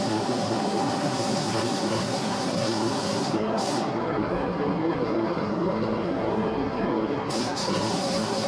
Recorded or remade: remade